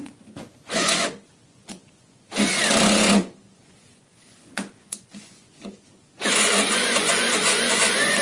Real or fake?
fake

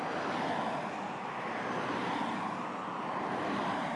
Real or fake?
real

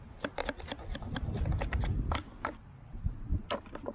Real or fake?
real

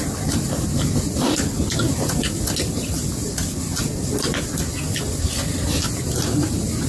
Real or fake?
fake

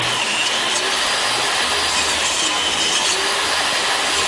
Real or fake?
real